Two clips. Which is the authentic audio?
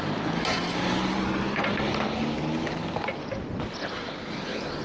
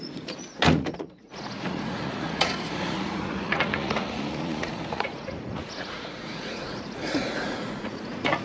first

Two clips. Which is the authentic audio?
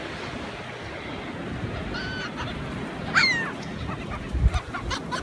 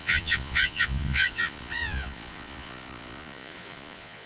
first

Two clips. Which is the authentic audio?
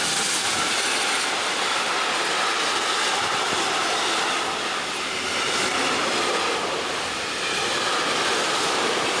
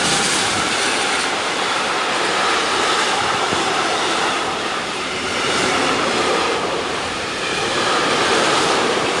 first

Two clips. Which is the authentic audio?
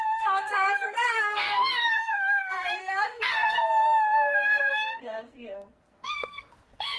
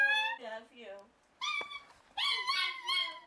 second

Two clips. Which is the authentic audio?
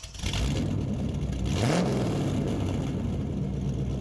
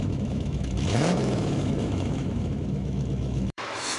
first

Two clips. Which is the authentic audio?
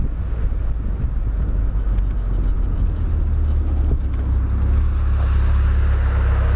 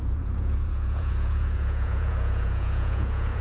first